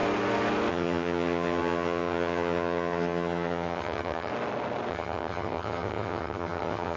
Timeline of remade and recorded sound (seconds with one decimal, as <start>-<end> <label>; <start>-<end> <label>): 0.0-0.7 recorded; 0.7-4.3 remade; 4.3-4.9 recorded; 4.9-7.0 remade